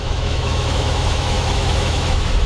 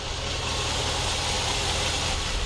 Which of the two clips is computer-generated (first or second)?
first